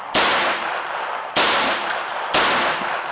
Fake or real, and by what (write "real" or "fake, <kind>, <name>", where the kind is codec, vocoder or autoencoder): fake, vocoder, BigVGAN v2